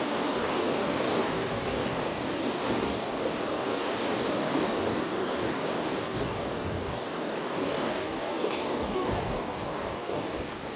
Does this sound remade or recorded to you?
remade